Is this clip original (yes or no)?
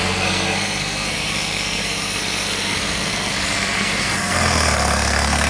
no